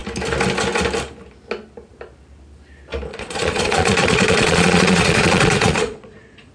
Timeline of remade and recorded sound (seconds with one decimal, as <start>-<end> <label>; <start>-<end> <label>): 0.0-3.1 recorded; 3.1-6.5 remade